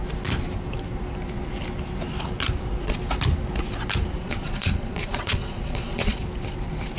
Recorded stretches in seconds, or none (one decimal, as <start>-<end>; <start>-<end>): 0.0-4.2; 6.2-7.0